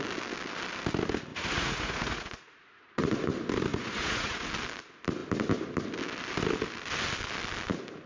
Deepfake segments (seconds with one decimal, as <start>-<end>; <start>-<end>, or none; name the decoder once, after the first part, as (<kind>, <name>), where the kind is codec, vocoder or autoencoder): 1.3-3.3 (vocoder, Vocos); 3.7-4.5